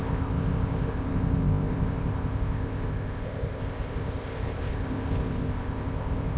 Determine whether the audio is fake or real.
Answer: fake